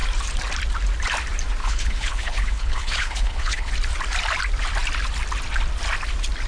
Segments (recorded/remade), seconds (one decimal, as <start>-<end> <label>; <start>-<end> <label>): 0.0-1.6 recorded; 1.6-3.7 remade; 3.7-6.5 recorded